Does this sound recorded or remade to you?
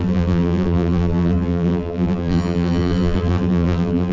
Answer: remade